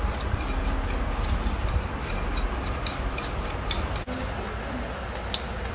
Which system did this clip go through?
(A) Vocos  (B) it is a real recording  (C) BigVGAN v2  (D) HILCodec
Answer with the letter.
B